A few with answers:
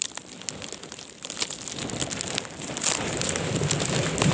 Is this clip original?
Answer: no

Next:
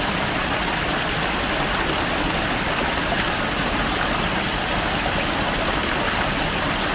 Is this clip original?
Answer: yes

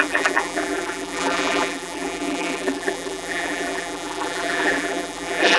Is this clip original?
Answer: no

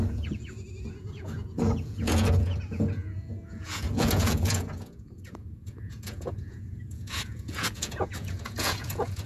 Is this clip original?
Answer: no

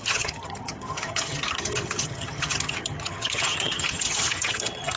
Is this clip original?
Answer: no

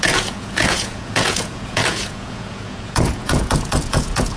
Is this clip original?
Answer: no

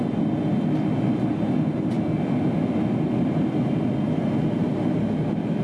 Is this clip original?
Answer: yes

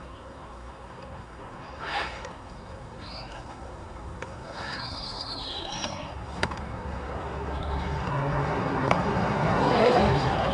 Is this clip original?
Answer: no